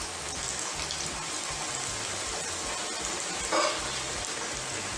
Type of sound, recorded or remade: recorded